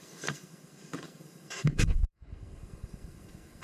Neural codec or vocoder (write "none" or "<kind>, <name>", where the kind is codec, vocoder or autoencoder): codec, SNAC